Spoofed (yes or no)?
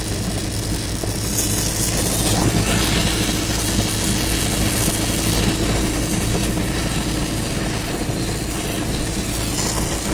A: no